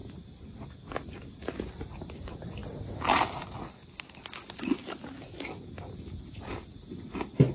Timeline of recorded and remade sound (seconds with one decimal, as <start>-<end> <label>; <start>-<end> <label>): 0.0-7.5 recorded